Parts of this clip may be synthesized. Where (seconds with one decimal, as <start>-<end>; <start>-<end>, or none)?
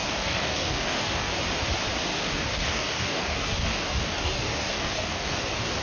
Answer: 0.0-1.4; 2.1-5.8